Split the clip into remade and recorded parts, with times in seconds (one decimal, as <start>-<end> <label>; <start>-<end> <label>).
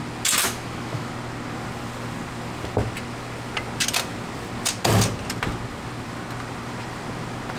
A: 0.0-0.4 recorded; 0.4-1.1 remade; 1.1-7.6 recorded